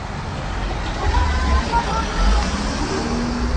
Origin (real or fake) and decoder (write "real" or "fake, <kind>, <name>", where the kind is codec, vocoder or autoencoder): real